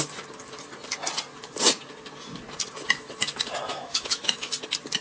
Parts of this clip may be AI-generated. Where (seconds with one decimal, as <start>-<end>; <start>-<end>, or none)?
3.7-4.5